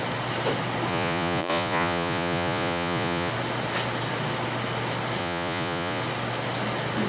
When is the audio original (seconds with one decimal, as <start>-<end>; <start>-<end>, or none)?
0.0-0.9; 3.3-5.2; 6.0-7.1